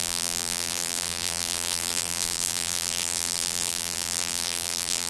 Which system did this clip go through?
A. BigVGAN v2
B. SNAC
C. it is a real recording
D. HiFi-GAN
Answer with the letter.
A